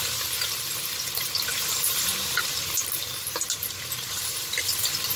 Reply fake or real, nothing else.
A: fake